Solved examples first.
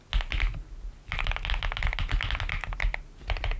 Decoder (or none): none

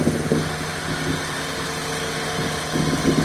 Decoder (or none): none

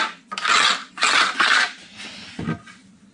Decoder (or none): none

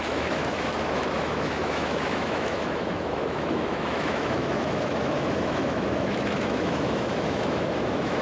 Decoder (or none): autoencoder, DAC-VAE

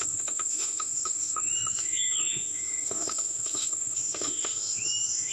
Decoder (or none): autoencoder, DAC-VAE